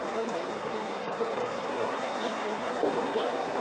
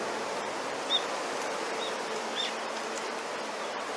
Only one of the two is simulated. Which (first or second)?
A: first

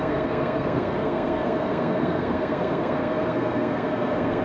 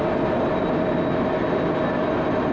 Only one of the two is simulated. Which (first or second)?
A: first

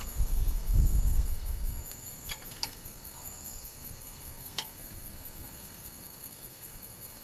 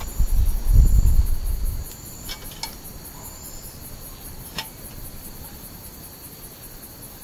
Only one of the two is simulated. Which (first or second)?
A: first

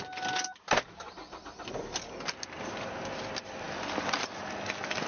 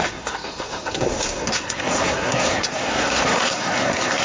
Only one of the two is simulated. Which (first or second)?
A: second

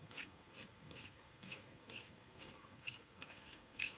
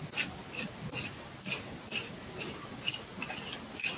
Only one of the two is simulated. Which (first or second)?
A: first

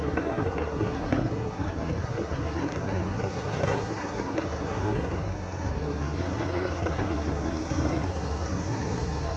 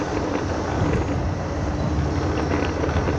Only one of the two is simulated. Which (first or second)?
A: first